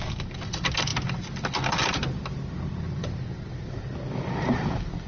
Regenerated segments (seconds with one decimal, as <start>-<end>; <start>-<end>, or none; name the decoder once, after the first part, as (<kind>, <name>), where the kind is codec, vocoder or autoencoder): none

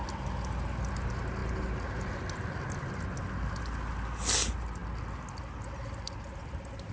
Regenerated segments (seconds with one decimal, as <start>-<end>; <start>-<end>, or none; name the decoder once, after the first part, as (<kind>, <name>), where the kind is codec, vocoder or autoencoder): none

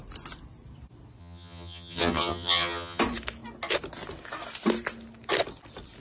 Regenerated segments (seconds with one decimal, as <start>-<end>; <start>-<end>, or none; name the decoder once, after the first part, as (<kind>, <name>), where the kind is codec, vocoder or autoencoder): 1.2-3.0 (vocoder, HiFi-GAN)

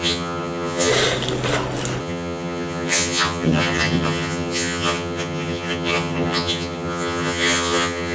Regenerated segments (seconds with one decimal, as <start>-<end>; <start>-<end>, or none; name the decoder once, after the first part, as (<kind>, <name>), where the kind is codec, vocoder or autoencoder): 0.0-0.9 (vocoder, HiFi-GAN); 2.0-8.1

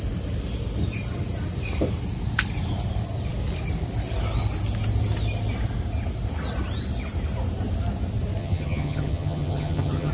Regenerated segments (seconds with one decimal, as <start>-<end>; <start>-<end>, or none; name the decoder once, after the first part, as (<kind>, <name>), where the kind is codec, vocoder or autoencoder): 8.4-10.1 (vocoder, HiFi-GAN)

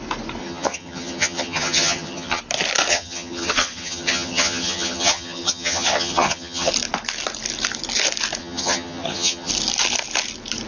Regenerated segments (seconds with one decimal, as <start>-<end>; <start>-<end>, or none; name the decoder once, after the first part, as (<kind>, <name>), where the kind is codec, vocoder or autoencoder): 0.4-2.4 (vocoder, HiFi-GAN); 2.9-6.7; 8.4-9.5